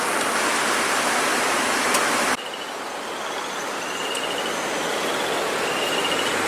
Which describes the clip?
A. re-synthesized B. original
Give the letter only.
B